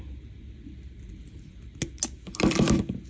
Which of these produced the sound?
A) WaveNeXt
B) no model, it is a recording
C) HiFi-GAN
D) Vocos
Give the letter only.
B